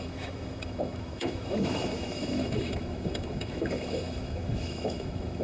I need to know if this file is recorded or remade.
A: remade